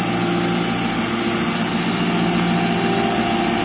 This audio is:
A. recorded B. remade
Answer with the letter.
A